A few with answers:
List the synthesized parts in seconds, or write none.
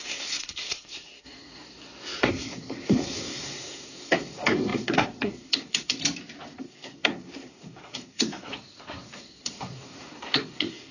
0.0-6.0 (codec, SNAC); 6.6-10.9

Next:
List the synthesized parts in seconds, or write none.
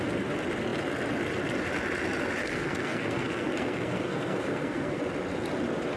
2.4-5.0 (codec, SNAC)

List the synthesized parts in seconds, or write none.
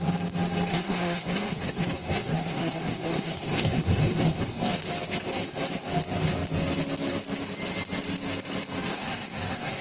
0.7-4.7 (codec, SNAC); 5.3-5.9; 8.9-9.8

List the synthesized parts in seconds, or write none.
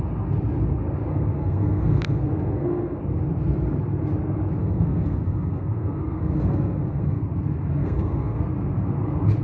1.1-3.0 (codec, SNAC); 4.6-7.2; 7.8-8.4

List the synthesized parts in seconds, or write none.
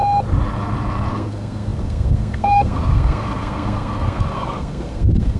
1.1-5.4 (codec, SNAC)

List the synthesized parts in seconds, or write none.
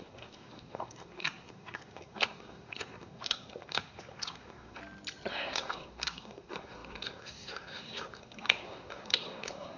0.0-4.8 (codec, SNAC); 5.3-9.8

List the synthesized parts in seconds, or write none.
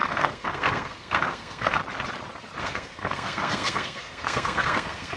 0.0-1.8 (codec, SNAC); 2.6-5.2